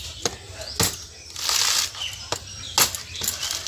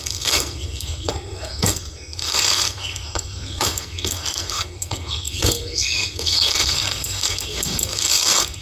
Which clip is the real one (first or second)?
first